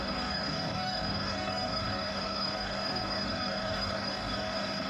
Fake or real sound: fake